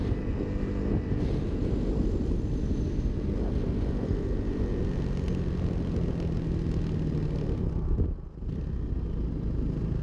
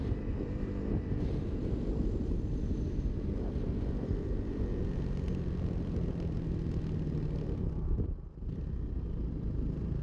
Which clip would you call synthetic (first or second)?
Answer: second